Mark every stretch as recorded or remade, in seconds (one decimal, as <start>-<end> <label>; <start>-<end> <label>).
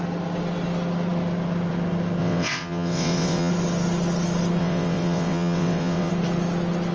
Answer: 0.0-2.2 recorded; 2.2-3.5 remade; 3.5-4.6 recorded; 4.6-6.1 remade; 6.1-6.9 recorded